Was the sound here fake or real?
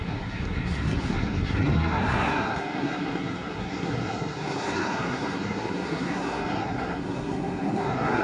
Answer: fake